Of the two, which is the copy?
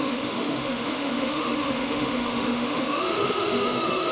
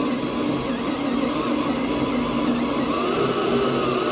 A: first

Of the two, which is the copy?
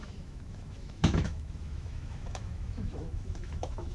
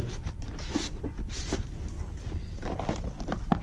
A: first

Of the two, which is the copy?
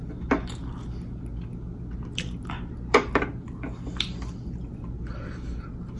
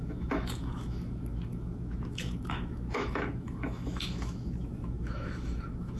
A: second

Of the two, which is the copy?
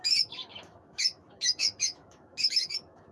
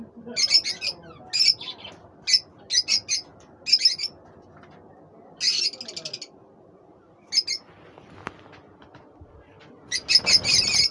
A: first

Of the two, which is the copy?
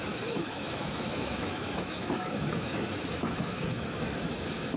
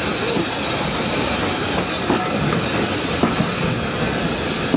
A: first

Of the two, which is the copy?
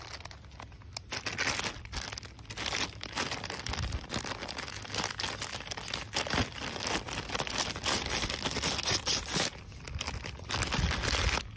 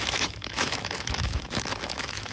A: second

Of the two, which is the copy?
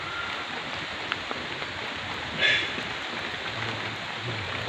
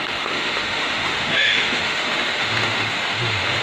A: second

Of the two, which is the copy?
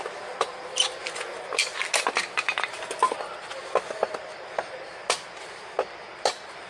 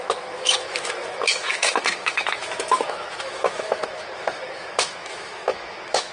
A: second